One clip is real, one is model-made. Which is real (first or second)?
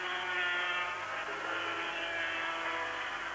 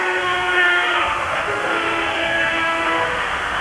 first